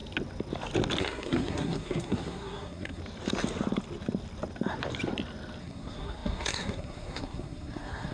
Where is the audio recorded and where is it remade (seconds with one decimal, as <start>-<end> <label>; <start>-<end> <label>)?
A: 0.0-1.0 recorded; 1.0-3.0 remade; 3.0-5.6 recorded; 5.6-8.1 remade